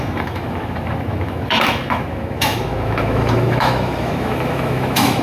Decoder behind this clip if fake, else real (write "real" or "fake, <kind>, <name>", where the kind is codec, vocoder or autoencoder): fake, autoencoder, DAC-VAE